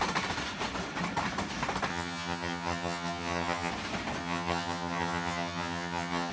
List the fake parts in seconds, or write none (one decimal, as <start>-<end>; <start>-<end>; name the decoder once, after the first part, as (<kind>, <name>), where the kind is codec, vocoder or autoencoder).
1.9-3.7 (vocoder, HiFi-GAN); 4.2-6.3